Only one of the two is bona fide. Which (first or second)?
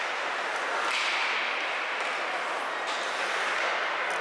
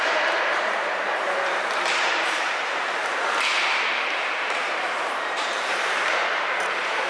first